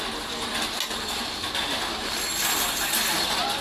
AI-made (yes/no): no